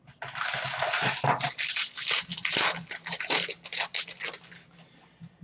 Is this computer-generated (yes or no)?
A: no